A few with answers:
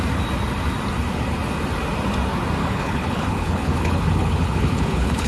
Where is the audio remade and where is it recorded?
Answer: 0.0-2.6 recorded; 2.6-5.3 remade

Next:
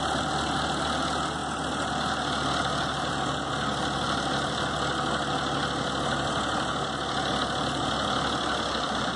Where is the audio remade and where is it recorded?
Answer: 0.0-9.2 recorded